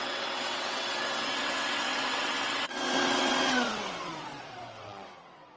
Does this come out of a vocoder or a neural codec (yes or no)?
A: yes